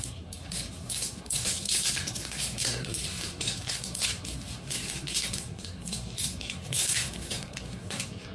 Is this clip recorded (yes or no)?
no